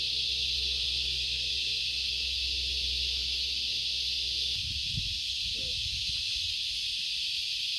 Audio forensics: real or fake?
real